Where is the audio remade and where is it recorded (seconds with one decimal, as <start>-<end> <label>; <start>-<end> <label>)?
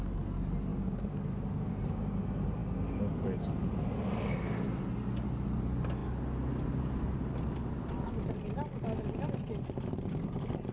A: 0.0-10.7 recorded